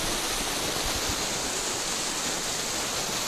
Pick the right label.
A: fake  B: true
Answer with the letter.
B